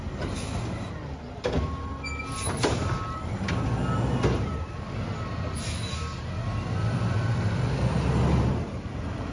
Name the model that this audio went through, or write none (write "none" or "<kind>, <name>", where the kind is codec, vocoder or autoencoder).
none